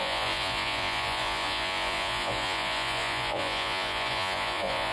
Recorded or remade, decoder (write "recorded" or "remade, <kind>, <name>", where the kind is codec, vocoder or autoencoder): remade, vocoder, Vocos